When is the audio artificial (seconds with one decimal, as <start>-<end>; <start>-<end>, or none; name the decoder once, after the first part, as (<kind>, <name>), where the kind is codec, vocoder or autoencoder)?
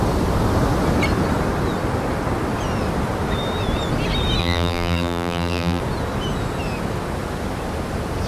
4.4-5.8 (vocoder, BigVGAN v2)